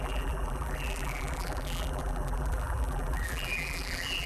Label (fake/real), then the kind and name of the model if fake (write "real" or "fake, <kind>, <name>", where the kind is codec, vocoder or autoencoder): fake, vocoder, BigVGAN v2